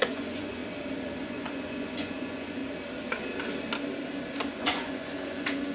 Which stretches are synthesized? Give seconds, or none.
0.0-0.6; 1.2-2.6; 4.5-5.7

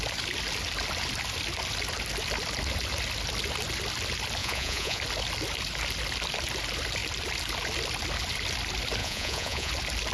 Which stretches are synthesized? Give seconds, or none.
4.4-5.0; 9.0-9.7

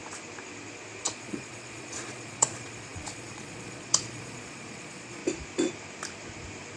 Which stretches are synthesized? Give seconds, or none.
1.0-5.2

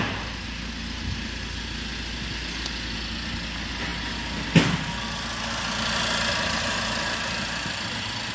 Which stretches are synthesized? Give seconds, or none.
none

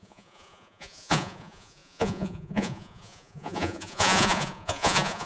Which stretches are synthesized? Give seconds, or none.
0.0-5.3

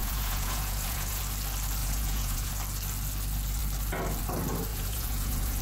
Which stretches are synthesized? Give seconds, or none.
0.0-1.2; 1.8-2.5; 4.7-5.6

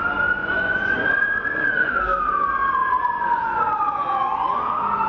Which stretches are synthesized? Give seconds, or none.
0.4-2.0; 2.8-4.6